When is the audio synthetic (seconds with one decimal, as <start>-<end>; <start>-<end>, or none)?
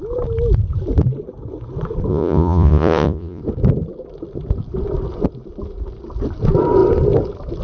2.1-3.4